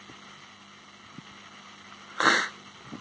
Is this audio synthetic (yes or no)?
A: no